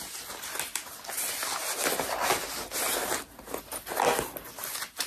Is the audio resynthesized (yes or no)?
no